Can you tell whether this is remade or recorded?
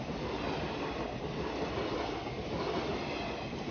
recorded